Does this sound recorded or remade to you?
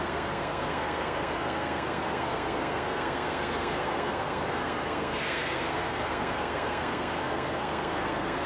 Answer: remade